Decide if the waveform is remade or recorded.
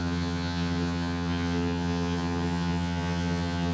remade